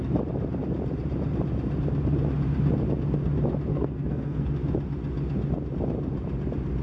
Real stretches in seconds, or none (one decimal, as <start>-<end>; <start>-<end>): 0.0-3.7; 4.5-6.8